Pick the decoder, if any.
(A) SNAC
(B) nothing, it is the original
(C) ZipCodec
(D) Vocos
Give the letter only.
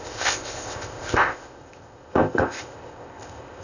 C